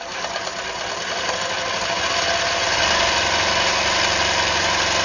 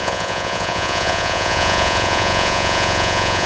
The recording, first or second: first